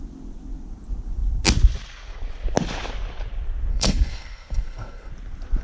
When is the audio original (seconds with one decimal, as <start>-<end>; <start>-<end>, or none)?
0.0-3.7; 5.1-5.6